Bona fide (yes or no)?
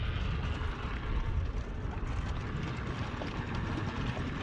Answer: yes